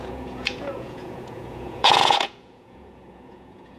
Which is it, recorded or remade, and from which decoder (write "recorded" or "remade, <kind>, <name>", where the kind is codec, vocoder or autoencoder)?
remade, vocoder, Vocos